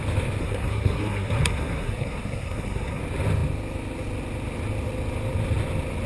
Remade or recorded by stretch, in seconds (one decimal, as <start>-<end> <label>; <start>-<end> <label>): 0.0-0.4 recorded; 0.4-3.0 remade; 3.0-6.1 recorded